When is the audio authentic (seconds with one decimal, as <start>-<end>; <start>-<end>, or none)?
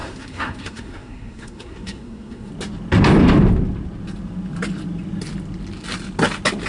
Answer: 2.5-6.7